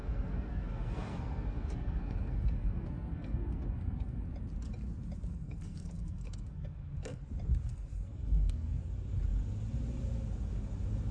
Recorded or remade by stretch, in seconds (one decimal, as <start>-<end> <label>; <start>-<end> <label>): 0.0-4.2 remade; 4.2-5.3 recorded; 5.3-7.2 remade; 7.2-7.7 recorded; 7.7-8.8 remade; 8.8-11.1 recorded